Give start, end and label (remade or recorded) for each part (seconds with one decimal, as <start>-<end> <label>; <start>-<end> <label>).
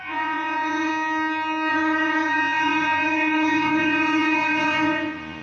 0.0-0.9 remade; 0.9-1.7 recorded; 1.7-5.4 remade